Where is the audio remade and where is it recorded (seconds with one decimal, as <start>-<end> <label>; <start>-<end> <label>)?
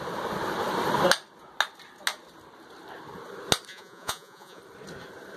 0.0-3.7 recorded; 3.7-4.6 remade; 4.6-5.4 recorded